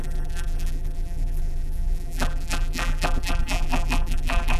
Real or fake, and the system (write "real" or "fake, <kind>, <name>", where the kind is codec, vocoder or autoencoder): fake, vocoder, BigVGAN v2